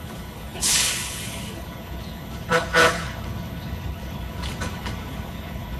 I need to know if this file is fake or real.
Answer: fake